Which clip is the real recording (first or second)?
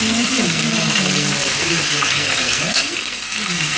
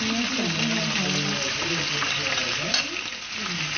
second